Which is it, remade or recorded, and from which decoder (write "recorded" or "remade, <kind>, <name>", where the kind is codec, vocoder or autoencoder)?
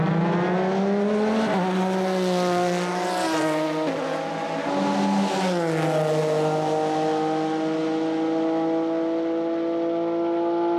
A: recorded